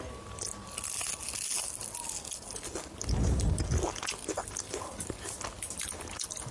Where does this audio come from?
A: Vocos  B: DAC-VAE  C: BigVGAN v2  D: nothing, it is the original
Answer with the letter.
D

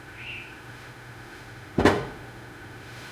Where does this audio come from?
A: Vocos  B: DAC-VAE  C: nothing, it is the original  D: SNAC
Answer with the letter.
B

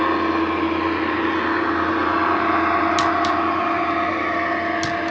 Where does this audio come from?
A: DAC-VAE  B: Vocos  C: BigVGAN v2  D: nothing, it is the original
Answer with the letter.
D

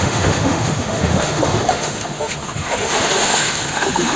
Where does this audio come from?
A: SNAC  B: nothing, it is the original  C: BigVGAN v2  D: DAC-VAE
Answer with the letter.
D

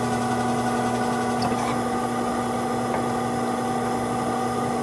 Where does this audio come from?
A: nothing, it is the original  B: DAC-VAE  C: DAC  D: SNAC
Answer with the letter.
A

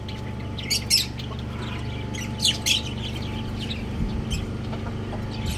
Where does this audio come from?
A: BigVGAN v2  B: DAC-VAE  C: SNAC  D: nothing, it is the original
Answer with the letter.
D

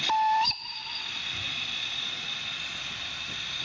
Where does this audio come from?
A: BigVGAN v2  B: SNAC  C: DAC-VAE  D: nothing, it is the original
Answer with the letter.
D